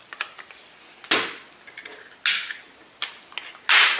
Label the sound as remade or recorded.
recorded